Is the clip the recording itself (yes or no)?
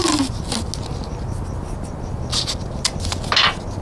yes